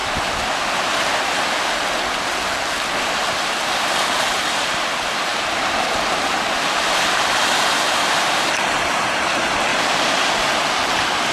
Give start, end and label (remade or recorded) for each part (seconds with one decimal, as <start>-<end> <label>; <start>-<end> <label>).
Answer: 0.0-5.3 recorded; 5.3-8.9 remade; 8.9-9.7 recorded; 9.7-10.3 remade; 10.3-11.3 recorded